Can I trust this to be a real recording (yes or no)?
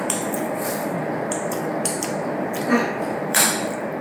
no